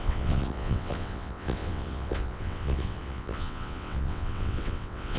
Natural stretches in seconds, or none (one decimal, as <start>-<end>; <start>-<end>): none

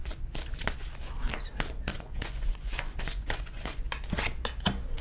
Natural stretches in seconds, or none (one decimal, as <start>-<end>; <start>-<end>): 0.0-1.9; 4.0-5.0

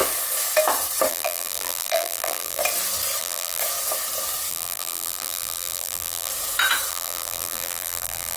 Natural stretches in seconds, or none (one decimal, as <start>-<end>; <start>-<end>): 0.0-1.1; 2.6-3.2; 3.6-4.5; 6.3-6.9